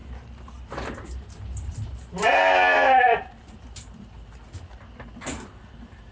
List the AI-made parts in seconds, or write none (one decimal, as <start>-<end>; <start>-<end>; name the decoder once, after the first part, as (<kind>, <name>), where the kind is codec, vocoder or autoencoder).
none